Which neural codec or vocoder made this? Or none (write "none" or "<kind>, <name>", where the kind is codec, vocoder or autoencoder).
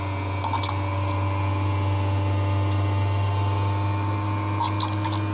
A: none